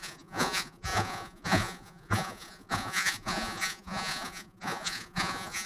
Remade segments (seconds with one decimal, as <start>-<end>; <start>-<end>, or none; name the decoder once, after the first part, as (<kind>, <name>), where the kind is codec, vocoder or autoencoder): 0.0-5.7 (vocoder, Vocos)